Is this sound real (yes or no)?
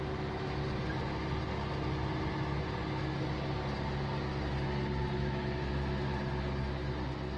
yes